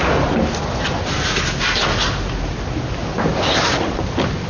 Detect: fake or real real